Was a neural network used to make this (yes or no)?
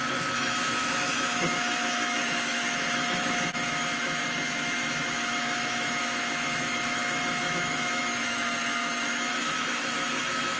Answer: yes